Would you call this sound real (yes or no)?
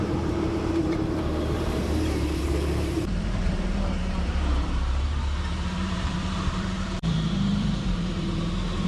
no